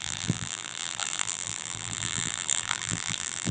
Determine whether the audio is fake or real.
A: fake